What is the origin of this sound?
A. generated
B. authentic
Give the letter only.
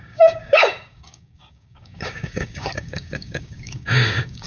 A